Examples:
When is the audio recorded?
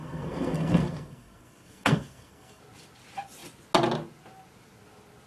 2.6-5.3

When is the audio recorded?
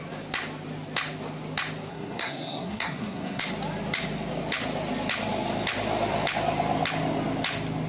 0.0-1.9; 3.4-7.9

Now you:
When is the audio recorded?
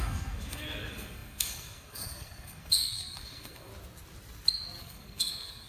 3.7-4.8